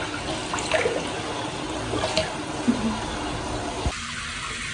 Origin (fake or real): real